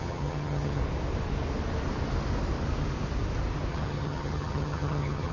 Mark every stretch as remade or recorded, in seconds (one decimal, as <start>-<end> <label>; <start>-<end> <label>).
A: 0.0-0.8 remade; 0.8-3.7 recorded; 3.7-5.3 remade